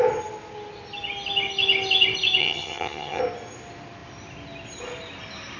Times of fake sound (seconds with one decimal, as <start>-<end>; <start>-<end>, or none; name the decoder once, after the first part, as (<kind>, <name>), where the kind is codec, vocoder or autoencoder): 2.4-3.2 (vocoder, HiFi-GAN)

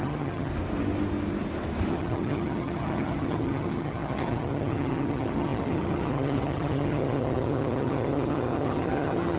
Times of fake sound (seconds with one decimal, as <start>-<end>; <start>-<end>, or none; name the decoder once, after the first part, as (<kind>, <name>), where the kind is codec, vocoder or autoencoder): 0.0-0.5 (vocoder, HiFi-GAN); 1.9-9.4

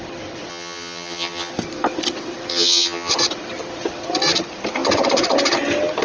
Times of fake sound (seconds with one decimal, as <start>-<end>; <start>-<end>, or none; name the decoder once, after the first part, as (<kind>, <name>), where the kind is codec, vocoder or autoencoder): 0.5-1.5 (vocoder, HiFi-GAN); 2.5-3.1

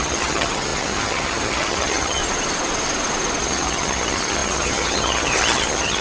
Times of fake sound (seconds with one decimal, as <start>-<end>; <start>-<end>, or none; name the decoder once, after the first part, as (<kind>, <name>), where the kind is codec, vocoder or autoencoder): 0.0-2.2 (vocoder, HiFi-GAN); 3.4-6.0

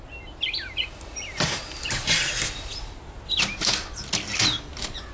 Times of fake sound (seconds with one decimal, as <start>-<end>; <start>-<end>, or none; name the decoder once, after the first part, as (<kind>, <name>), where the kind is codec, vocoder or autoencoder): none

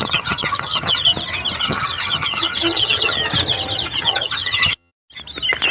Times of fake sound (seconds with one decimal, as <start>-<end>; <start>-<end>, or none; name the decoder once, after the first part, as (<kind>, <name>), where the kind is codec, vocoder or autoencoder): 0.0-1.1 (vocoder, HiFi-GAN); 1.6-3.2; 4.0-4.9

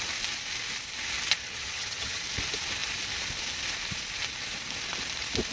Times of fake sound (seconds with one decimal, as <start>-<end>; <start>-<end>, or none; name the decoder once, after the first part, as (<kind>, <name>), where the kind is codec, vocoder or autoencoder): 1.4-2.2 (vocoder, HiFi-GAN)